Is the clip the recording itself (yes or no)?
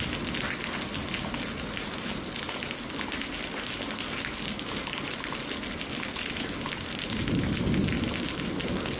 yes